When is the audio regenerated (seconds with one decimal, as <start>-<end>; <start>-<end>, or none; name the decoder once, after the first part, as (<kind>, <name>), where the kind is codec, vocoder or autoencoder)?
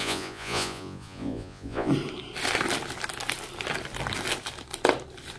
0.0-1.9 (vocoder, Vocos)